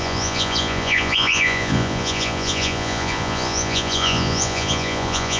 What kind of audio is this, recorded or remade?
remade